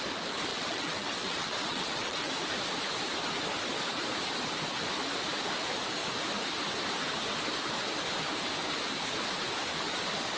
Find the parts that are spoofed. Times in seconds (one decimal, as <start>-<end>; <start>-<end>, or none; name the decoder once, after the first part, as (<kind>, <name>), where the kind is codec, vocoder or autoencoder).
0.5-2.3 (vocoder, WaveNeXt)